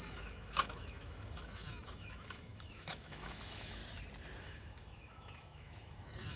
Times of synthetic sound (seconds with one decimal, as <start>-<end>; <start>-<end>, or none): 0.0-3.8; 4.4-6.4

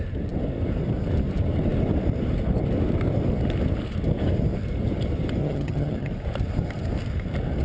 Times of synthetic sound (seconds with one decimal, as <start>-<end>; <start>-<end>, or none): 5.4-6.1

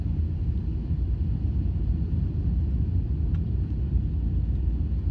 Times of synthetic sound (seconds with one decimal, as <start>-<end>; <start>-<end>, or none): none

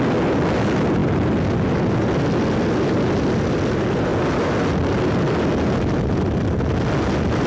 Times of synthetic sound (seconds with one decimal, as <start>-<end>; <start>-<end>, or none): none

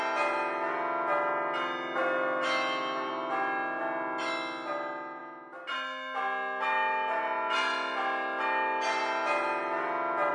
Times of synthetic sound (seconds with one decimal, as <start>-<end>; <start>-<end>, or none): none

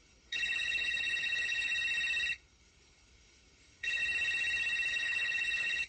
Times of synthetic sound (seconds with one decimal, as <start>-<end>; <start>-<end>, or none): 0.0-1.7; 2.3-4.0; 4.9-5.9

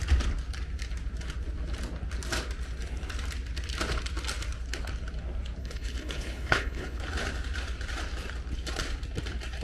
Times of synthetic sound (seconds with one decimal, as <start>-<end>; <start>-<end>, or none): 5.6-7.0